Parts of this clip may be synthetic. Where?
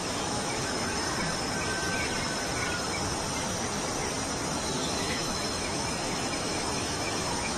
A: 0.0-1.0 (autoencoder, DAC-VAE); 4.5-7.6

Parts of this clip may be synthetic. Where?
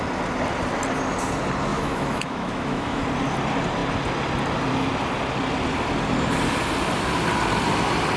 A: 1.7-3.0 (autoencoder, DAC-VAE)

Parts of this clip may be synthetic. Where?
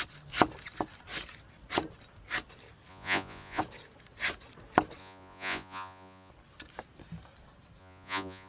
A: 2.9-3.6 (vocoder, Vocos); 5.0-6.3; 7.8-8.5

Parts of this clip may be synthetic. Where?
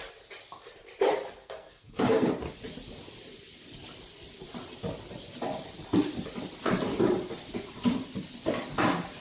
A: 1.4-2.3 (codec, SNAC)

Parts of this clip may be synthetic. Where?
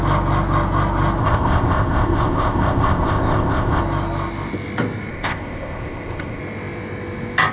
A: 1.2-3.8 (codec, ZipCodec); 5.1-6.4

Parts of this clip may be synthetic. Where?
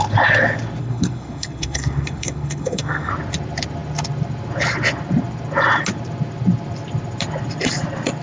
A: 0.8-3.1 (codec, SNAC)